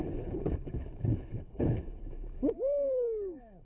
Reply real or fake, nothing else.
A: fake